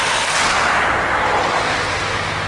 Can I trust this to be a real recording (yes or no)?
yes